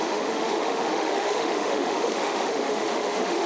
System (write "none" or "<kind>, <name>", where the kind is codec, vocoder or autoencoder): autoencoder, DAC-VAE